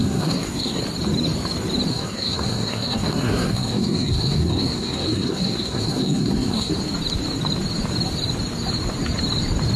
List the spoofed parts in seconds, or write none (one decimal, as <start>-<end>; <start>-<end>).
0.0-0.8; 1.9-6.7